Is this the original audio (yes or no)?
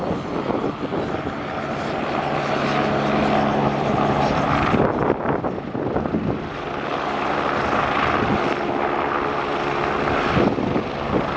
yes